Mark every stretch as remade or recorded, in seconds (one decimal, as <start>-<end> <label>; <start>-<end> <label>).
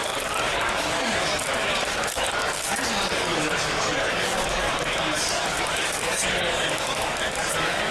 0.0-7.9 remade